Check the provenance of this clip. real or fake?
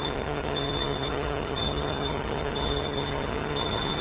fake